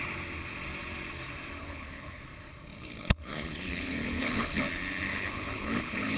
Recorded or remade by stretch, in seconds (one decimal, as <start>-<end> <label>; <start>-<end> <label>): 0.0-1.6 recorded; 1.6-2.2 remade; 2.2-2.7 recorded; 2.7-4.6 remade; 4.6-5.1 recorded; 5.1-6.2 remade